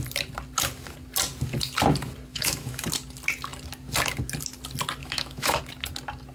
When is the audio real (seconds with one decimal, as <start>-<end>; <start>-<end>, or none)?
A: 0.0-2.3; 2.9-5.0; 5.6-6.3